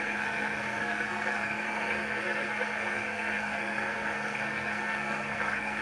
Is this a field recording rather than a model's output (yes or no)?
no